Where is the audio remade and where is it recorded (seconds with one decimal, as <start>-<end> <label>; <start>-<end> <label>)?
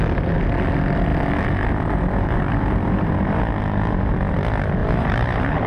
0.0-4.8 recorded; 4.8-5.7 remade